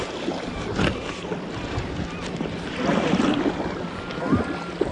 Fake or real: real